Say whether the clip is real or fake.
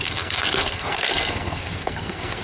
fake